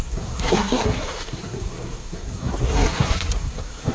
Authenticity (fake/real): fake